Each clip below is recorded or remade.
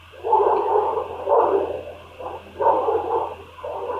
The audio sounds recorded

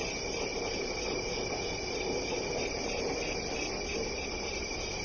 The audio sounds recorded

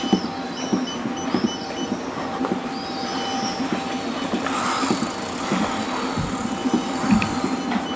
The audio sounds recorded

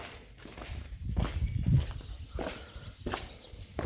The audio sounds recorded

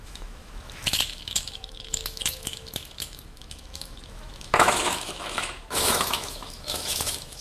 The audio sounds remade